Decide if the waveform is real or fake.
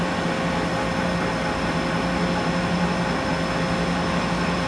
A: real